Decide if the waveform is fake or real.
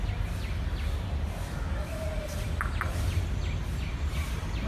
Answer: real